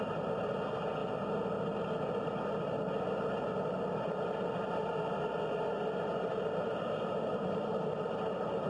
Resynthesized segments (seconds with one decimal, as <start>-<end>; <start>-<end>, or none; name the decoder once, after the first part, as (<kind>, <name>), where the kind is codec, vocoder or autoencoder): none